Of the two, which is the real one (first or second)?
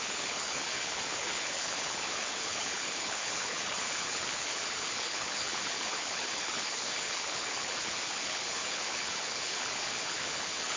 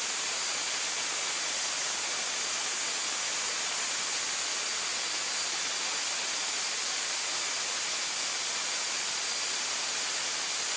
second